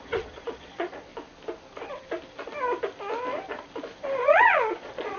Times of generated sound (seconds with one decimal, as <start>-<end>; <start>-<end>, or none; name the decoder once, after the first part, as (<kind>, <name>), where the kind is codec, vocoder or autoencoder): 0.0-1.1 (vocoder, Vocos); 4.2-5.2